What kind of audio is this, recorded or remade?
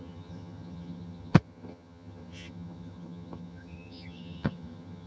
remade